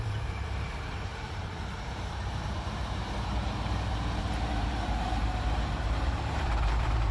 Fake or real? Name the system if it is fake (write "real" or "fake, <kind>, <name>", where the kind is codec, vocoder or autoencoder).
fake, vocoder, BigVGAN v2